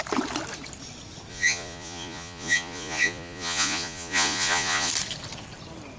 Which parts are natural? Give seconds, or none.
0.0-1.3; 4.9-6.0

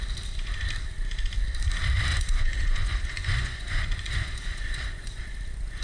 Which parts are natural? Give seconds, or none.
0.0-2.1; 5.2-5.8

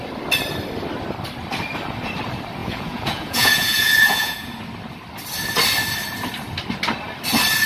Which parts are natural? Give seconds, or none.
0.0-2.6; 4.6-7.7

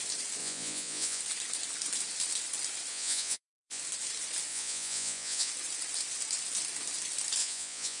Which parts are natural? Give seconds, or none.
0.0-0.4; 1.2-2.9; 3.8-4.5; 5.5-7.4

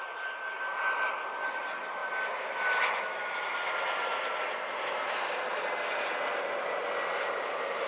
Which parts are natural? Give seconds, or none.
0.0-7.9

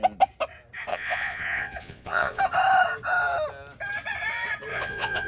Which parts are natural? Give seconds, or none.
0.0-0.9; 2.4-4.7

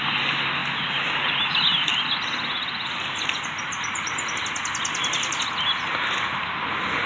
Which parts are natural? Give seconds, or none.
0.0-7.1

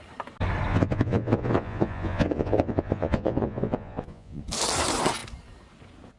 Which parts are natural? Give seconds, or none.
0.0-0.7; 4.4-6.2